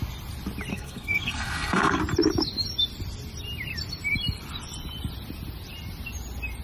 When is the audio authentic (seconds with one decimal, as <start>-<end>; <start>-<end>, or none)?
0.0-0.7; 2.0-6.6

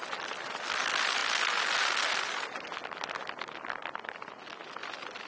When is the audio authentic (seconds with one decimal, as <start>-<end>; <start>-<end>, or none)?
0.0-5.3

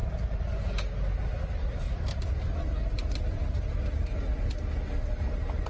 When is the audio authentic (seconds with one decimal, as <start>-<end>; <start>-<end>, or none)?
1.0-5.7

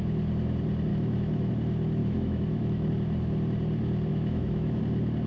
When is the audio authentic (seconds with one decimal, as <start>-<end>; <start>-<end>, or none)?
0.0-0.9; 1.5-2.0; 2.9-4.1; 4.8-5.3